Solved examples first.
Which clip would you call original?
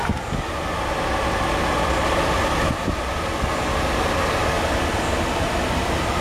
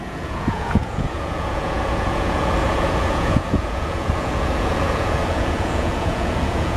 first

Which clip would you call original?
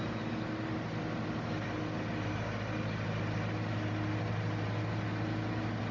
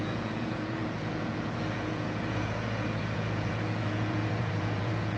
first